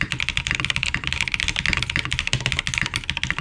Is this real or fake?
real